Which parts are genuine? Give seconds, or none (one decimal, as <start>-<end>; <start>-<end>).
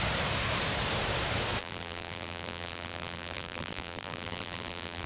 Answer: 0.0-1.6